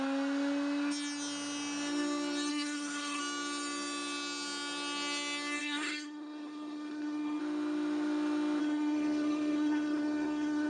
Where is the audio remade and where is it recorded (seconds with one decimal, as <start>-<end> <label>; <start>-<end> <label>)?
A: 0.0-2.5 recorded; 2.5-3.2 remade; 3.2-5.6 recorded; 5.6-7.4 remade; 7.4-8.6 recorded; 8.6-10.7 remade